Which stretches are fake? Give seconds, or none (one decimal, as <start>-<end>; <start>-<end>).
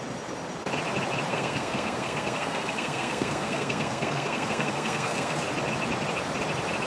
1.3-5.4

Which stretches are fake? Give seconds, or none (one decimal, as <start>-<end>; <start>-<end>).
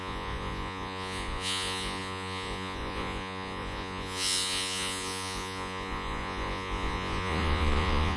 0.0-8.2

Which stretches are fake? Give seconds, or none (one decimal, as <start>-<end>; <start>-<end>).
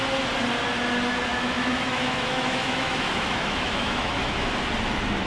1.3-4.5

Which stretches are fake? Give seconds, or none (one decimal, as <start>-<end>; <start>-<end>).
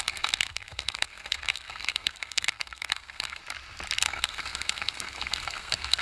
0.0-3.4; 4.0-6.0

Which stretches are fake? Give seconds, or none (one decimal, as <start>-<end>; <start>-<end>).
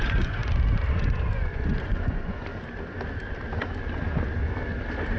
0.0-0.4; 0.9-2.5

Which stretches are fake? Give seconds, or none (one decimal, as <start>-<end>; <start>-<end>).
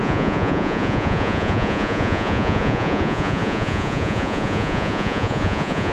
0.0-5.9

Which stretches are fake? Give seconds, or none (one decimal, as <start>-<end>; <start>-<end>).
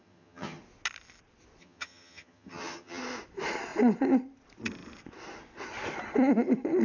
0.0-0.6; 1.6-3.0